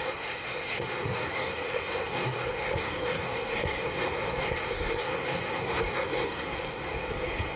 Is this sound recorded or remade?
remade